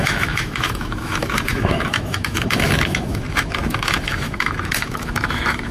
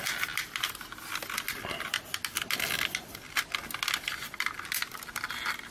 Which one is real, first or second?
second